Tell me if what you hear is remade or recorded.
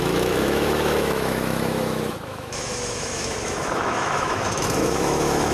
remade